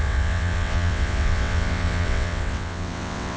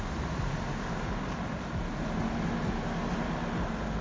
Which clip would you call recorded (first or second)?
second